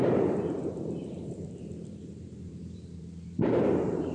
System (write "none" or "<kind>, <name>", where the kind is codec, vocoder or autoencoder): vocoder, BigVGAN v2